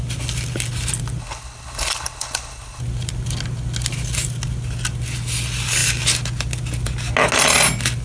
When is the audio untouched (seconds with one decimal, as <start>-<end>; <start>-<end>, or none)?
0.0-1.2; 2.8-8.0